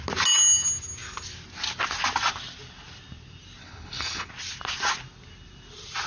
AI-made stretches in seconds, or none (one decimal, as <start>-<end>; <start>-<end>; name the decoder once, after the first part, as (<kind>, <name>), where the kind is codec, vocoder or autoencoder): 3.6-4.3 (codec, HILCodec)